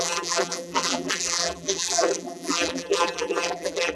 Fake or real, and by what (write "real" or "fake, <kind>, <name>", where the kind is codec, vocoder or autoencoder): fake, vocoder, BigVGAN v2